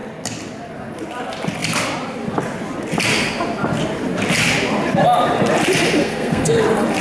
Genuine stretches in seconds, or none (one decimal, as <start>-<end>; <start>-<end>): 0.0-6.0; 6.6-7.0